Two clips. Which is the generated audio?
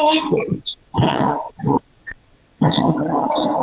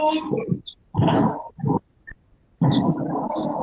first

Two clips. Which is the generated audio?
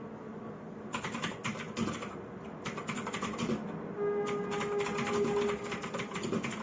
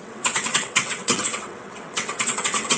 second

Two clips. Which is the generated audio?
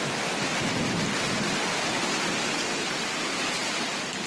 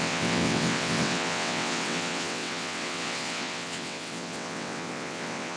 second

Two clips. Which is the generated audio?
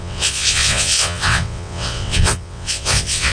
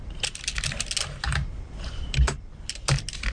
first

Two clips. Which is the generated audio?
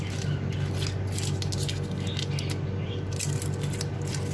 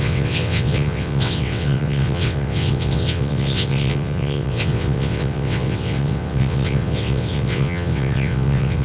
second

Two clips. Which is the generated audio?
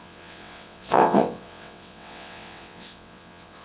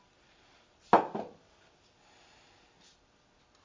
first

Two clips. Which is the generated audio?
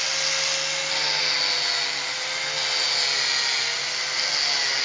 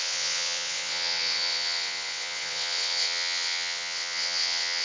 second